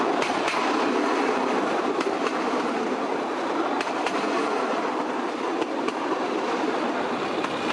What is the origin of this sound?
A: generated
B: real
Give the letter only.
B